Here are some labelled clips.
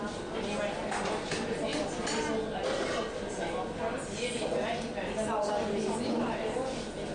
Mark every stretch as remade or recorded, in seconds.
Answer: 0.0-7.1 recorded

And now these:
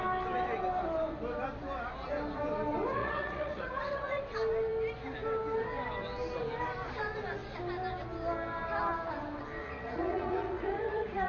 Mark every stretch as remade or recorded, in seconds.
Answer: 0.0-3.0 recorded; 3.0-4.2 remade; 4.2-9.6 recorded; 9.6-11.3 remade

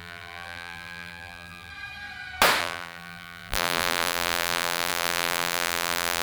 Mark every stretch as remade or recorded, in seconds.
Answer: 0.0-1.7 remade; 1.7-2.6 recorded; 2.6-6.2 remade

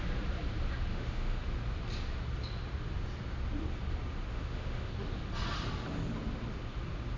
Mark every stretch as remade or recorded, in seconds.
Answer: 0.0-0.9 recorded; 0.9-1.4 remade; 1.4-4.3 recorded; 4.3-4.9 remade; 4.9-7.2 recorded